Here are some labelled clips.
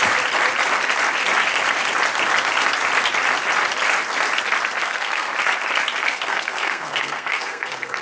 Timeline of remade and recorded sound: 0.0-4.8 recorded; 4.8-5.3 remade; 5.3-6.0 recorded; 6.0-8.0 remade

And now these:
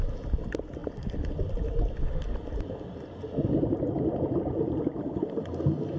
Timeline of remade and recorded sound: 0.0-0.8 recorded; 0.8-4.4 remade; 4.4-6.0 recorded

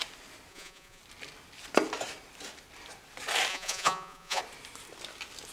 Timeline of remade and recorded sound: 0.0-0.5 recorded; 0.5-1.0 remade; 1.0-3.5 recorded; 3.5-4.4 remade; 4.4-5.5 recorded

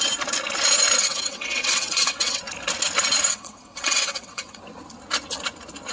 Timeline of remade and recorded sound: 0.0-1.0 recorded; 1.0-2.4 remade; 2.4-3.3 recorded; 3.3-4.6 remade; 4.6-5.9 recorded

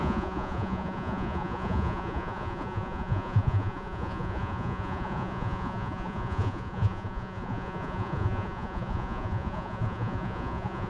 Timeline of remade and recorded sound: 0.0-10.9 remade